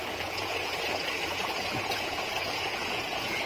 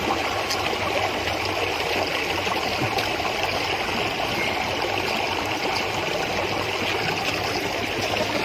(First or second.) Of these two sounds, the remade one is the first